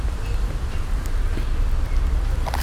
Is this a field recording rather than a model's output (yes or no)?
yes